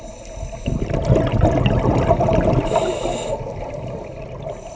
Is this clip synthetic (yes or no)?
no